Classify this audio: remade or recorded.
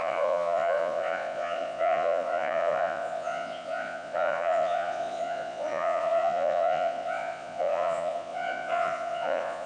remade